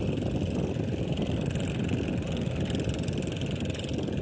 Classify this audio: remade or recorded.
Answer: recorded